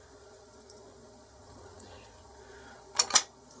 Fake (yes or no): yes